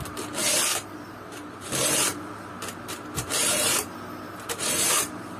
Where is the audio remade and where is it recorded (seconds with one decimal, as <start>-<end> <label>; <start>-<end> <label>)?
0.0-0.7 recorded; 0.7-1.7 remade; 1.7-2.1 recorded; 2.1-5.4 remade